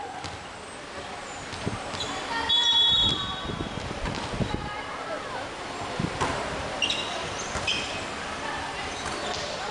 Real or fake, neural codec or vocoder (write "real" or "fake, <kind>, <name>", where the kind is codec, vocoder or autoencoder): fake, vocoder, BigVGAN v2